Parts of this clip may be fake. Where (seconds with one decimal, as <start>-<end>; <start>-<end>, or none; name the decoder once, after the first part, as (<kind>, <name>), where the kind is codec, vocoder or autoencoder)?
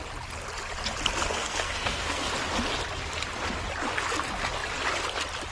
1.3-2.3 (codec, SNAC)